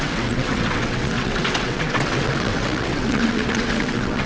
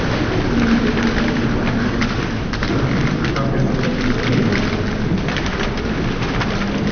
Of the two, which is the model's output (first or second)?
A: first